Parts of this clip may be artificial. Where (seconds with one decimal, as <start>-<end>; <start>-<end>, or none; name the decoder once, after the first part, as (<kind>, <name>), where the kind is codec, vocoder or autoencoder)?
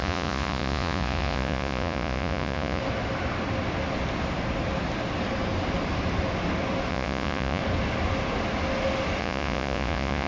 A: 0.0-2.8 (vocoder, Vocos); 6.9-7.6; 9.2-10.3